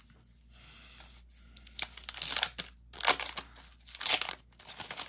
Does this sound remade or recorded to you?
recorded